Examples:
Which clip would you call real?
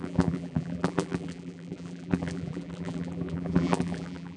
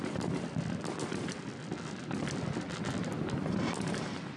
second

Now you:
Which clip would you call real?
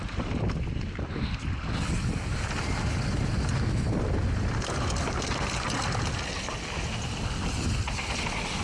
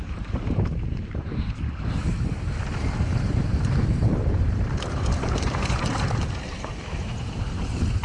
first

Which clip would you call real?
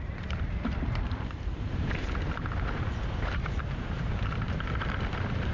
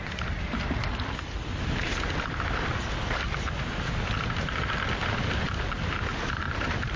second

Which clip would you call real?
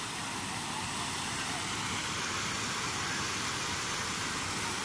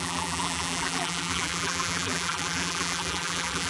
first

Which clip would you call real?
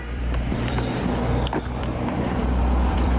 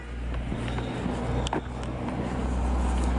second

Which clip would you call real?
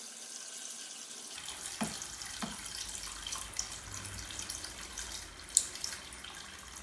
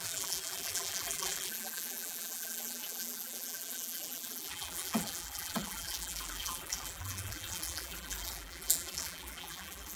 first